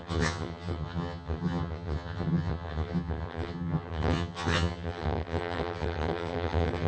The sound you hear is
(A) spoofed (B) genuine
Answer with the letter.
A